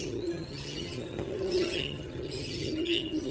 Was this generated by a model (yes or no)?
yes